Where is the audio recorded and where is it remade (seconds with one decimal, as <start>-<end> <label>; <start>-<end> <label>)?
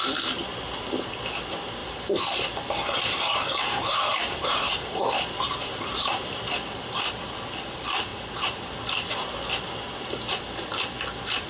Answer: 0.0-1.8 recorded; 1.8-6.4 remade; 6.4-11.5 recorded